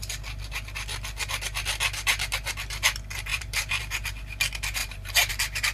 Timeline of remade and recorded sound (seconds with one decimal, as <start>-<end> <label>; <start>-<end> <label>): 0.0-3.3 recorded; 3.3-3.8 remade; 3.8-4.8 recorded; 4.8-5.3 remade; 5.3-5.7 recorded